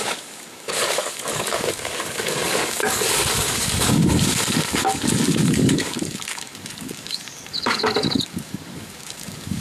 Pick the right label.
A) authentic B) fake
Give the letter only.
B